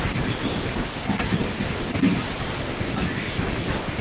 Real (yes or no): yes